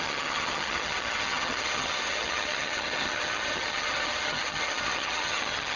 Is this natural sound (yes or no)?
no